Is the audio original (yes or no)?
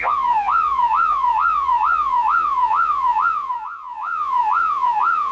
no